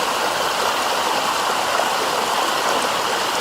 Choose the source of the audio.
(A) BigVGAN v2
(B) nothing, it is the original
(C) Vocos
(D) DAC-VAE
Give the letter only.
B